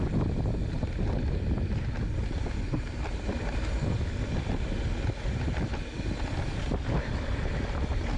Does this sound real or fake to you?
real